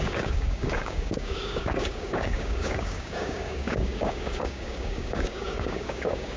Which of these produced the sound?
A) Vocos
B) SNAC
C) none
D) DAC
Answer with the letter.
D